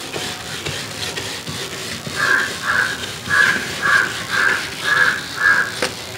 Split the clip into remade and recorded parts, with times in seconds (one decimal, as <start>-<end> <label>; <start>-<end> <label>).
0.0-3.0 recorded; 3.0-4.0 remade; 4.0-6.2 recorded